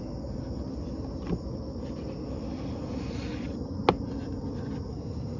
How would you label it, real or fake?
real